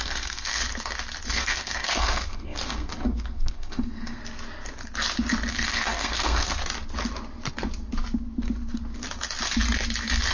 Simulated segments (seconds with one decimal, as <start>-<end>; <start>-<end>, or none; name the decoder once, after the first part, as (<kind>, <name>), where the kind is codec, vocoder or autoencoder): 0.0-0.6 (codec, SNAC); 1.3-4.2; 5.5-6.6